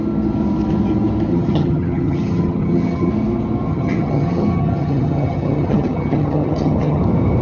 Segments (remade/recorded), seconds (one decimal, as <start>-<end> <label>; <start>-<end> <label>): 0.0-1.3 recorded; 1.3-3.1 remade; 3.1-3.7 recorded; 3.7-7.0 remade; 7.0-7.4 recorded